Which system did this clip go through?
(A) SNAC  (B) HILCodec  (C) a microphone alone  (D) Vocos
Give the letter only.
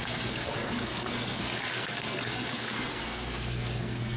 A